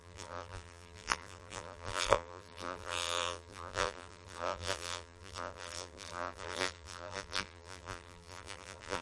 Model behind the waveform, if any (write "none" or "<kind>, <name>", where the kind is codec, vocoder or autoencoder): vocoder, BigVGAN v2